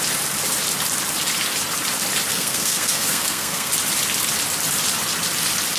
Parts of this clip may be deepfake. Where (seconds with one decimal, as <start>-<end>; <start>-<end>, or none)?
2.3-3.7

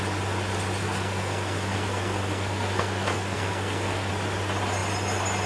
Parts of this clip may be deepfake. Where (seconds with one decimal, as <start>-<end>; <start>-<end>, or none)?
0.8-4.1

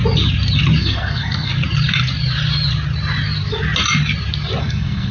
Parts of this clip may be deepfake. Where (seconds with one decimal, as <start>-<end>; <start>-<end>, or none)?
0.8-1.5; 4.6-5.1

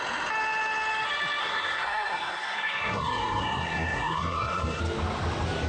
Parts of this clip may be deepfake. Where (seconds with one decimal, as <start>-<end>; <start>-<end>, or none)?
1.4-4.8

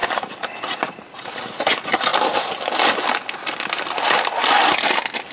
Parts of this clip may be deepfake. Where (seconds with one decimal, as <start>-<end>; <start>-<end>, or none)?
none

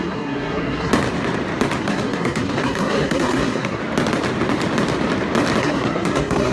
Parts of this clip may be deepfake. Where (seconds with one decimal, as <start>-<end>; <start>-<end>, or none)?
0.0-0.9; 1.8-3.8; 5.6-6.5

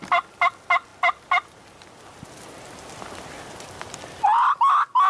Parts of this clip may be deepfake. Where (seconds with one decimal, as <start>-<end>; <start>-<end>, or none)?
none